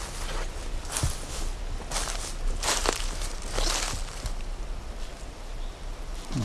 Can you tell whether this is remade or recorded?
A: recorded